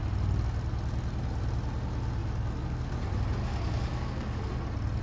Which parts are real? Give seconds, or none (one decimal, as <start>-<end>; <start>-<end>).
0.0-2.2; 2.9-3.4; 4.4-5.0